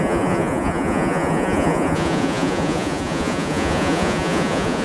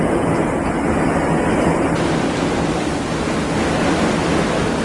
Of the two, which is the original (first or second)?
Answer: second